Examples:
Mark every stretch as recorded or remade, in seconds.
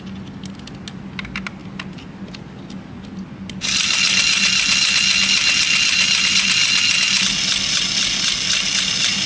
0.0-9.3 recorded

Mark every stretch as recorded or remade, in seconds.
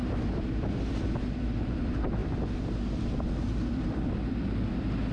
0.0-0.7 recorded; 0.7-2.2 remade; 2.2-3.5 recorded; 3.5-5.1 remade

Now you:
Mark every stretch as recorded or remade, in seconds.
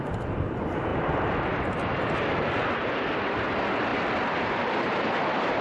0.0-5.6 recorded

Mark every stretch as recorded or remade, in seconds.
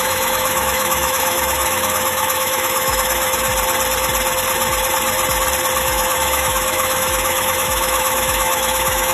0.0-3.5 remade; 3.5-5.8 recorded; 5.8-9.1 remade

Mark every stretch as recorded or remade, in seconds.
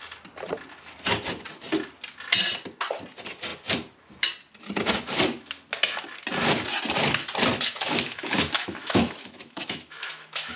0.0-7.5 recorded; 7.5-10.6 remade